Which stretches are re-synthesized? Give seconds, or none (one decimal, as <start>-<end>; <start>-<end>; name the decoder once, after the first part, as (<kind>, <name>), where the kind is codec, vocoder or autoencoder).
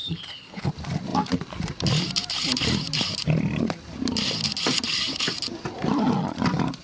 0.0-0.7 (codec, HILCodec)